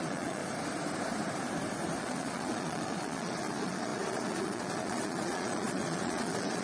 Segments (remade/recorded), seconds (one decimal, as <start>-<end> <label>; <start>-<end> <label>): 0.0-0.4 remade; 0.4-2.0 recorded; 2.0-6.6 remade